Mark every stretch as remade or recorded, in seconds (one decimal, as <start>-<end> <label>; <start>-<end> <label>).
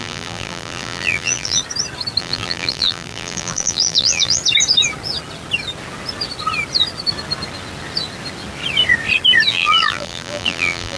0.0-1.6 remade; 1.6-2.2 recorded; 2.2-4.4 remade; 4.4-9.5 recorded; 9.5-11.0 remade